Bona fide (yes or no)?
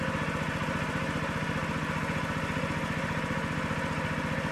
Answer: yes